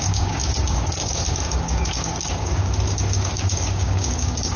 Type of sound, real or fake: fake